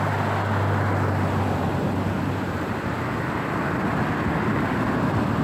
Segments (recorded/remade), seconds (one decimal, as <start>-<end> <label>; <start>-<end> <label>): 0.0-1.7 recorded; 1.7-4.1 remade; 4.1-5.4 recorded